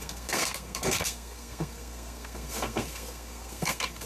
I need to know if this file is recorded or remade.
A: remade